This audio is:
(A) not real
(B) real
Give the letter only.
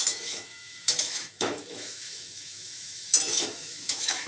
A